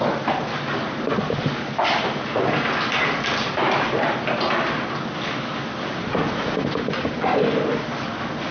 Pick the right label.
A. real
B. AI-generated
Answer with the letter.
A